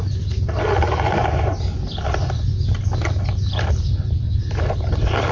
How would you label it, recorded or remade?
recorded